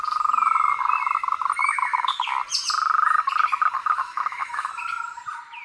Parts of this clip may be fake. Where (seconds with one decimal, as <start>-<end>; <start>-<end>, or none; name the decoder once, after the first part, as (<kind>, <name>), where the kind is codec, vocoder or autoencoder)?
1.6-2.4 (autoencoder, DAC-VAE); 3.8-4.7